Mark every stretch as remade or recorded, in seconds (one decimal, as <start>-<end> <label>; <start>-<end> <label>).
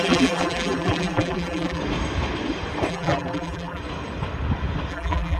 0.0-1.8 remade; 1.8-2.9 recorded; 2.9-3.8 remade; 3.8-4.9 recorded; 4.9-5.4 remade